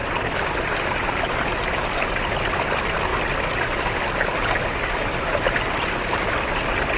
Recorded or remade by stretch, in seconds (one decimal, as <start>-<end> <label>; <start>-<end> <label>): 0.0-7.0 recorded